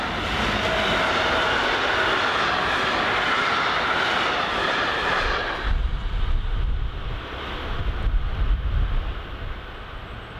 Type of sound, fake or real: real